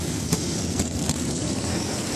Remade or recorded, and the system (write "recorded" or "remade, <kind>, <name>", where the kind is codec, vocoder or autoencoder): remade, codec, SNAC